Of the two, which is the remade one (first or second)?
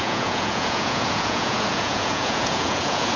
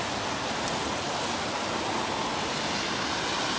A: first